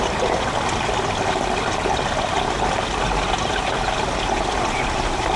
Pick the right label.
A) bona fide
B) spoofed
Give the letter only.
A